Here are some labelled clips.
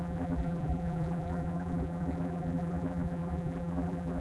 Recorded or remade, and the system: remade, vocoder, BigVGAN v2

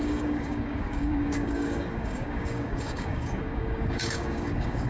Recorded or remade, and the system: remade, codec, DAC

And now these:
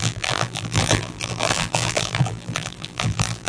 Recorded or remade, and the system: remade, vocoder, BigVGAN v2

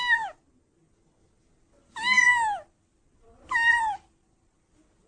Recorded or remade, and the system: recorded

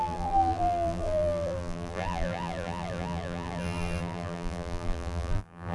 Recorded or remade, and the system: remade, vocoder, BigVGAN v2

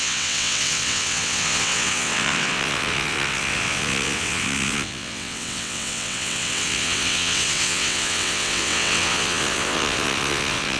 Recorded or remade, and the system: remade, vocoder, WaveNeXt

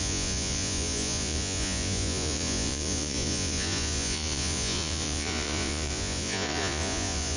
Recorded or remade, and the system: remade, vocoder, Vocos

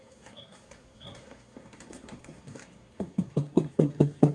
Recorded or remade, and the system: remade, codec, SNAC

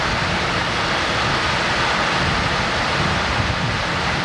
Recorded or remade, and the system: recorded